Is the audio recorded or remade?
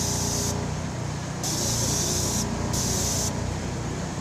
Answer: recorded